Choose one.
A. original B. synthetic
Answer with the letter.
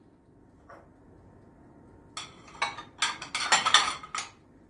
A